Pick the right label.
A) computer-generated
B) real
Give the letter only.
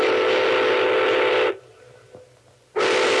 B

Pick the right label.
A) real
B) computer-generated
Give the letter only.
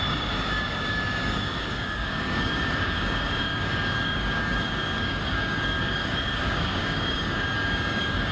B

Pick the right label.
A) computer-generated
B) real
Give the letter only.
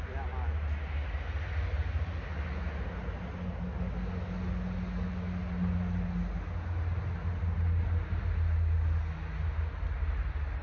B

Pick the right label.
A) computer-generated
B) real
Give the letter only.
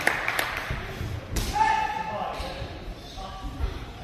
A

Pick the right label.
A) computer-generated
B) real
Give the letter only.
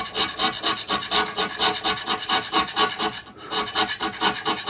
B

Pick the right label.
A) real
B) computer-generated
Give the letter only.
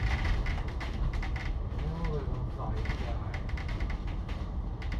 A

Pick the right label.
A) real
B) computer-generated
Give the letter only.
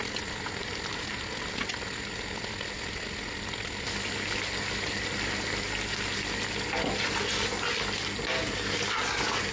A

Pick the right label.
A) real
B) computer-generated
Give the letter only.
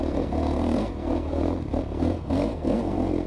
B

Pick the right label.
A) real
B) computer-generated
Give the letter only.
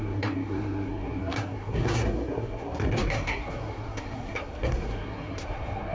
B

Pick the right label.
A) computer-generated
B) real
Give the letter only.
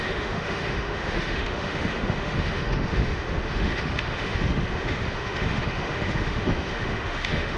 A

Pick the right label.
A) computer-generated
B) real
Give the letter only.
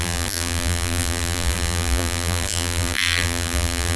A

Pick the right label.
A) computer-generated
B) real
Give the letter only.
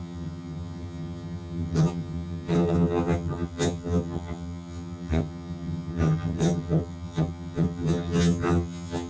A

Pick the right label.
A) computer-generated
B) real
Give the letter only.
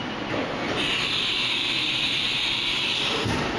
B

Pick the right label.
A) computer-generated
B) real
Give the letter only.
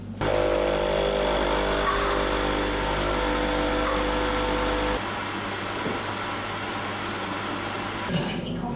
B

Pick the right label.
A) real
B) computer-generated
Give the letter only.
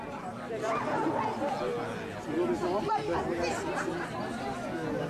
A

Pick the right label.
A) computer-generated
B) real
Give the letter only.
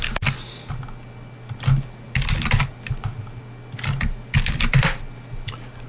B